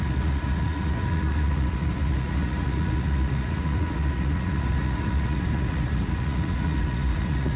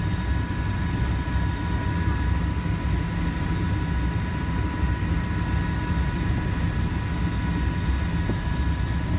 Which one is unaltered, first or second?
second